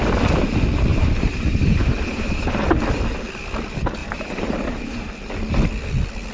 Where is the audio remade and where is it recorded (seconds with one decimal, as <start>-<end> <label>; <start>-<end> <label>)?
0.0-0.9 recorded; 0.9-2.7 remade; 2.7-4.0 recorded; 4.0-5.1 remade; 5.1-6.3 recorded